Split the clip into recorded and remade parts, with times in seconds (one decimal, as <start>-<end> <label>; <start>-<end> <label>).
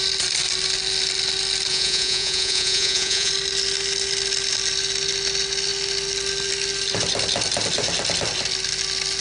0.0-1.7 recorded; 1.7-3.3 remade; 3.3-9.2 recorded